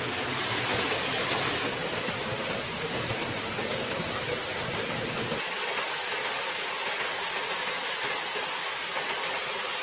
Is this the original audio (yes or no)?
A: yes